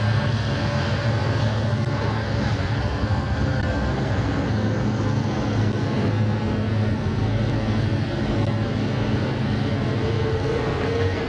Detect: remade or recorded remade